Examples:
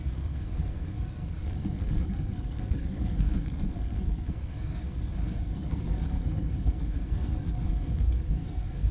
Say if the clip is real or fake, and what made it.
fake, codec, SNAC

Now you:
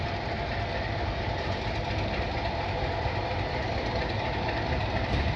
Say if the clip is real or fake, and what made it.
fake, vocoder, BigVGAN v2